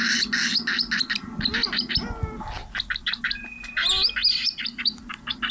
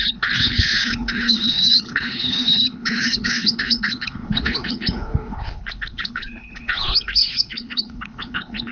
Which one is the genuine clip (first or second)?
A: first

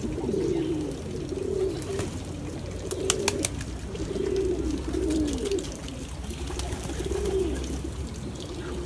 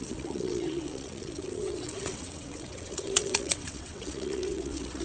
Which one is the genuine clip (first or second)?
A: first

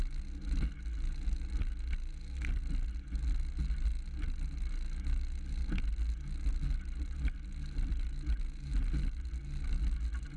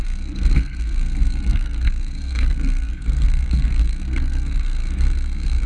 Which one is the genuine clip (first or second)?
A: first